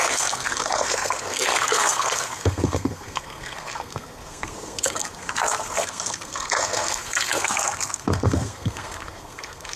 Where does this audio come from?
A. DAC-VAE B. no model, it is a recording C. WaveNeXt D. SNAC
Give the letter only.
D